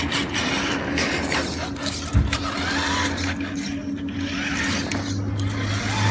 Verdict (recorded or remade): recorded